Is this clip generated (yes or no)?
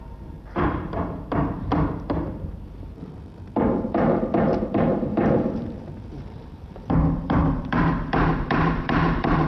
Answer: yes